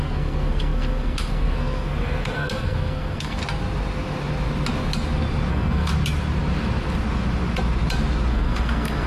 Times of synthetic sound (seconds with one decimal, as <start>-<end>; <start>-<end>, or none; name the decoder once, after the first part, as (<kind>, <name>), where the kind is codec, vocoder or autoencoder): 0.0-3.4 (codec, SNAC); 5.5-5.9; 8.3-9.1